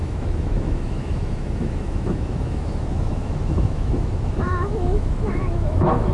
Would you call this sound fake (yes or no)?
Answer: yes